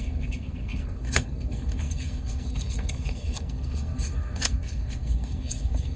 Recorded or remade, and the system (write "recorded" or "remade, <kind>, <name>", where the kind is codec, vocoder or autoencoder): remade, codec, SNAC